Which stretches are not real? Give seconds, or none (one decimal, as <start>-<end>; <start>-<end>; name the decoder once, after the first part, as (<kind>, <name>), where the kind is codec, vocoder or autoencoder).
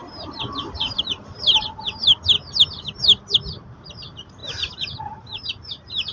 0.0-2.0 (vocoder, BigVGAN v2); 3.5-6.1